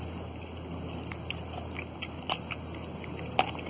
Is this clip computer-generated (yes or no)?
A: no